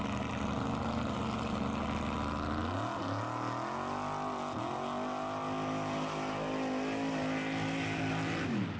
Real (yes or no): yes